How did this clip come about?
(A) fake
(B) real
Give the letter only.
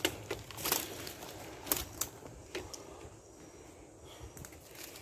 B